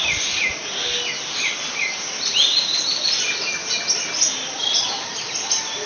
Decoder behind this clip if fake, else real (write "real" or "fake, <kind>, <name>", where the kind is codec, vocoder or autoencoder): real